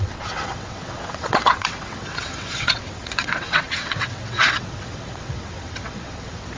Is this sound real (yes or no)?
no